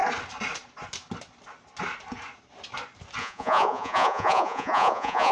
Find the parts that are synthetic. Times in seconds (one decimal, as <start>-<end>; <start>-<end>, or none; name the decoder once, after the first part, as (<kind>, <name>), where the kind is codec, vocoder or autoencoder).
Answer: 3.2-5.3 (vocoder, Vocos)